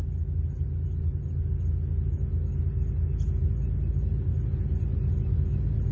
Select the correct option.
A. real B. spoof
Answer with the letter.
A